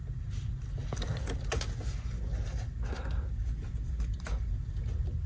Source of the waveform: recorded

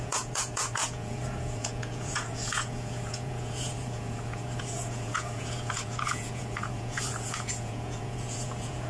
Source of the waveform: remade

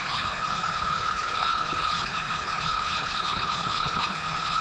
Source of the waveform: remade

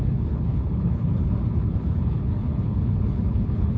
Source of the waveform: remade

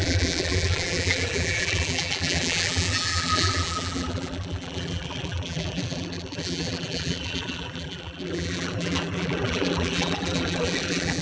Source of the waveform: remade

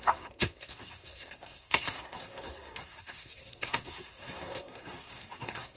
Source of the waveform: remade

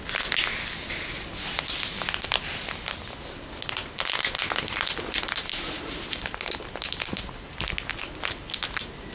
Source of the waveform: recorded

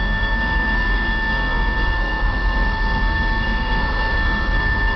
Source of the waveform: remade